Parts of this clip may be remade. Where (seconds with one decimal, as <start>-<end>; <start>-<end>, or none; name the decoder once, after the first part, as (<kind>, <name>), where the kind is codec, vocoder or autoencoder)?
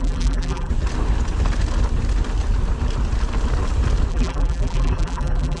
0.0-0.7 (vocoder, BigVGAN v2); 4.1-5.6